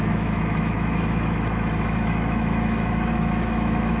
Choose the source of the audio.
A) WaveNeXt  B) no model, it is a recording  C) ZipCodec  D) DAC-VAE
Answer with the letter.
D